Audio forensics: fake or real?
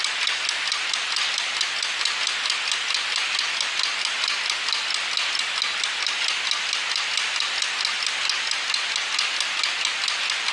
real